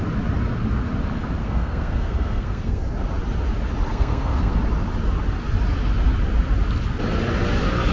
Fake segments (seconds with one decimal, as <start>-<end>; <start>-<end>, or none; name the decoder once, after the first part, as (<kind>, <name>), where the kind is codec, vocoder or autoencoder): 1.4-2.9 (codec, SNAC); 3.9-4.6